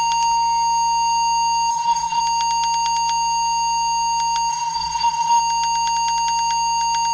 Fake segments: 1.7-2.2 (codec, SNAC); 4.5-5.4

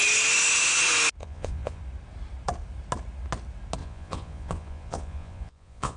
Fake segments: 1.2-1.8 (vocoder, Vocos); 3.8-6.0

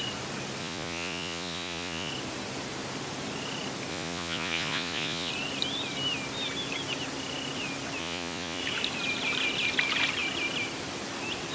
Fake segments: 0.6-2.1 (vocoder, Vocos); 3.9-5.3; 8.0-8.6

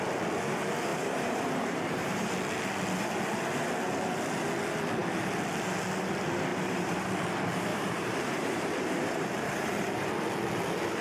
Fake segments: 0.9-2.3 (vocoder, BigVGAN v2); 6.5-7.1; 7.7-10.1

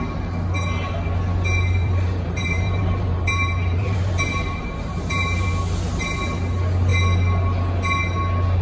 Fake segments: 1.8-5.5 (vocoder, BigVGAN v2)